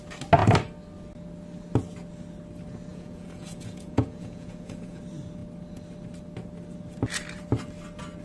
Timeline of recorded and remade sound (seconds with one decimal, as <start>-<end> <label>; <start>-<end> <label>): 0.0-2.9 recorded; 2.9-5.0 remade; 5.0-8.2 recorded